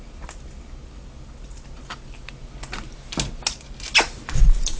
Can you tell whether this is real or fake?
real